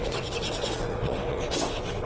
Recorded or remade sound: remade